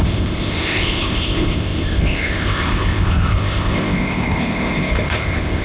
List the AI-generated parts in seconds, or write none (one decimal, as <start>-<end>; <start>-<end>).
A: 0.0-5.6